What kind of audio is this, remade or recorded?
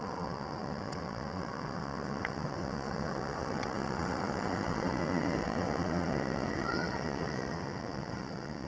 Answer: remade